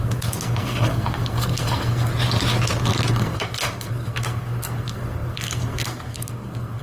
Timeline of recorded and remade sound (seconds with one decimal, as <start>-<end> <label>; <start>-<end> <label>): 0.0-2.1 remade; 2.1-3.1 recorded; 3.1-6.8 remade